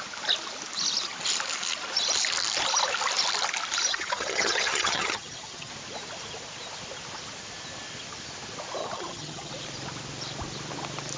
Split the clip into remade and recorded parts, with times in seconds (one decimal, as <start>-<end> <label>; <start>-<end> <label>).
0.0-3.9 recorded; 3.9-5.7 remade; 5.7-8.8 recorded; 8.8-9.5 remade; 9.5-11.2 recorded